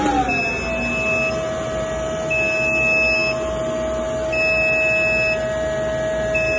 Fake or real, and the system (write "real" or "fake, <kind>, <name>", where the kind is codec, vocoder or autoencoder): real